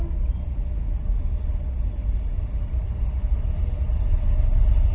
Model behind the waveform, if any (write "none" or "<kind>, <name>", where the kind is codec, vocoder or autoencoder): none